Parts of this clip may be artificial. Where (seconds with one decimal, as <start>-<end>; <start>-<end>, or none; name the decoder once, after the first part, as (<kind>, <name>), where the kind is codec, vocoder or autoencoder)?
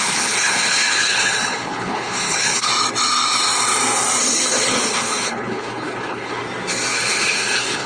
0.0-2.7 (codec, HILCodec); 4.2-6.4; 6.9-7.9